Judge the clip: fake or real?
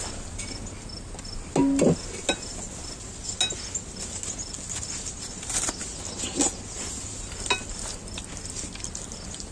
real